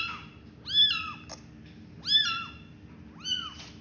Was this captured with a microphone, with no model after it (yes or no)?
yes